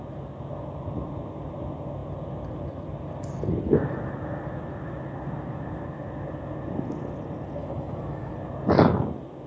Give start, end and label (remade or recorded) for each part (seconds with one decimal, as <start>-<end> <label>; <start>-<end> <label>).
0.0-7.6 recorded; 7.6-8.3 remade; 8.3-9.5 recorded